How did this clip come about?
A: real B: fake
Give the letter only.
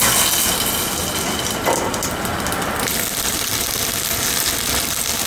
A